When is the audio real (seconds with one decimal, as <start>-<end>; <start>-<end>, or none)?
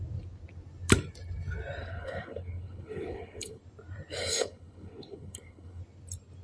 0.0-1.8; 3.6-4.2; 5.8-6.4